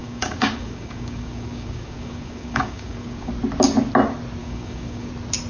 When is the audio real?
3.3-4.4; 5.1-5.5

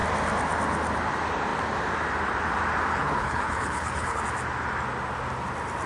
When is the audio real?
0.0-2.9; 4.2-5.9

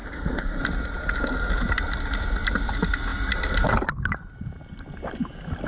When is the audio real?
0.6-5.7

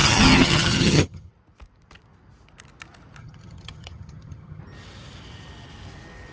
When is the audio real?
1.3-3.2; 4.6-6.3

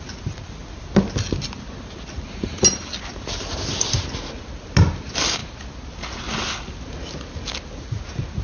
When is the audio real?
0.0-8.4

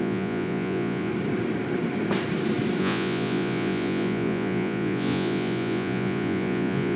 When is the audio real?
1.1-2.8